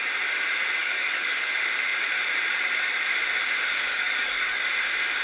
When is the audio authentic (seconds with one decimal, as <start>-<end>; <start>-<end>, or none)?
0.0-0.8; 1.5-3.9; 4.6-5.2

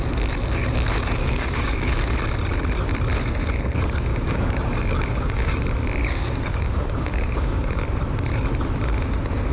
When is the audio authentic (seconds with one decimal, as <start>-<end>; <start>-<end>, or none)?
0.0-1.2; 2.0-4.1; 5.5-6.0; 7.8-9.5

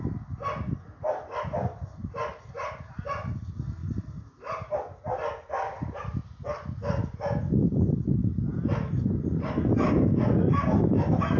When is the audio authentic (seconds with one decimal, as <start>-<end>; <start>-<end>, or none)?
0.0-11.4